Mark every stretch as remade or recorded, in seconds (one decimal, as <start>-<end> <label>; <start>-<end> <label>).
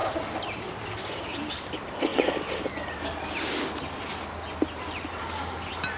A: 0.0-6.0 recorded